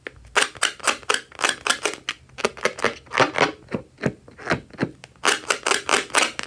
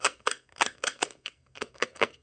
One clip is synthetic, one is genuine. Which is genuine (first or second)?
first